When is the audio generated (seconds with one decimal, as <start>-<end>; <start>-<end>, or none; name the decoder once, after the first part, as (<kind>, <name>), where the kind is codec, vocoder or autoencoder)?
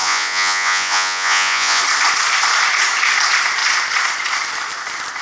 0.0-1.8 (vocoder, Vocos)